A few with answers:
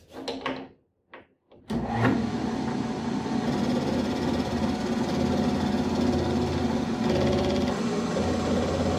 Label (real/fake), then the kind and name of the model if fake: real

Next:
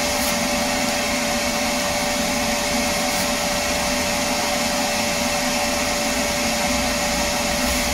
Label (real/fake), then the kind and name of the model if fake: real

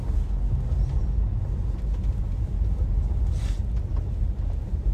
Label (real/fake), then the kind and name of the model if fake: real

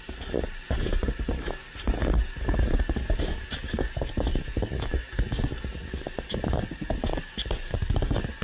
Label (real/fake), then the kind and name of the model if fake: real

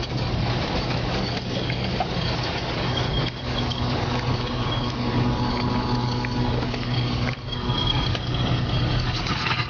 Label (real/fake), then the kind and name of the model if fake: fake, codec, DAC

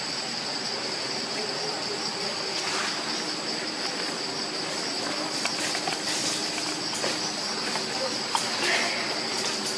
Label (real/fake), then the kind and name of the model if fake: real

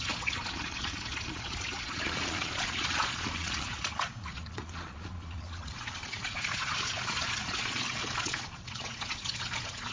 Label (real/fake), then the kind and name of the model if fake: fake, vocoder, Vocos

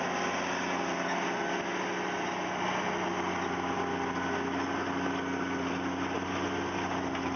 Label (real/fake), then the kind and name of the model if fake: real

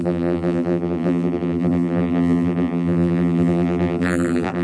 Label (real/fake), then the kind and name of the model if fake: fake, vocoder, BigVGAN v2